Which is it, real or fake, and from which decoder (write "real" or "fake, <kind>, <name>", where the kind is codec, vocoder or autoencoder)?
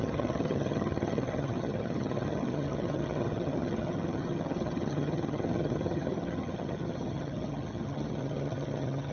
fake, vocoder, HiFi-GAN